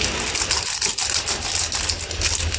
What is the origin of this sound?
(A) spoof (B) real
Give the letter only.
B